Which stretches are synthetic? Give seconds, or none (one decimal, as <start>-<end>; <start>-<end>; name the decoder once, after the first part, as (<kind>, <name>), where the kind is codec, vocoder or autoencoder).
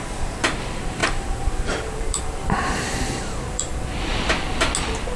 0.0-3.7 (vocoder, BigVGAN v2)